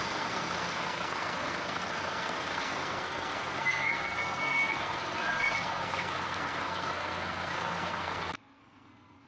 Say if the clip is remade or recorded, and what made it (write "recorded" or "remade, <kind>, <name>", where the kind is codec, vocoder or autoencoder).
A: remade, codec, SNAC